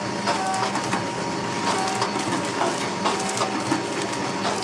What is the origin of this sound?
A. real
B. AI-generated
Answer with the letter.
A